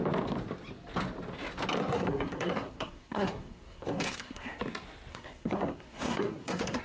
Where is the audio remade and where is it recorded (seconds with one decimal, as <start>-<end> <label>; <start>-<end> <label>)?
0.0-1.8 recorded; 1.8-4.6 remade; 4.6-5.1 recorded; 5.1-6.8 remade